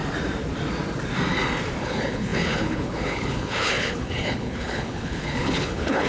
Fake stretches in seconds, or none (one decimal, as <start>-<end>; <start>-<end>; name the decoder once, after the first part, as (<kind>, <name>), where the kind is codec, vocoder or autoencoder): 1.8-6.1 (codec, HILCodec)